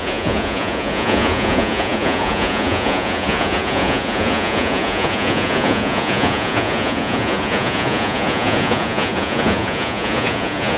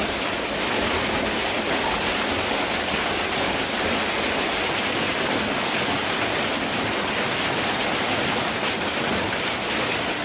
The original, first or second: second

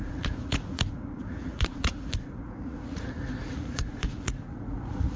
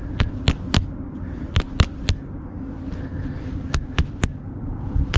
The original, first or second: second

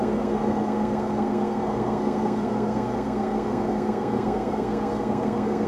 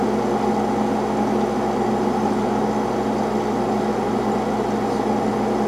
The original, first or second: second